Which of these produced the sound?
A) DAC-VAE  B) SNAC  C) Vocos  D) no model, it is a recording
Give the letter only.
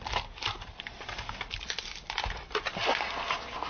D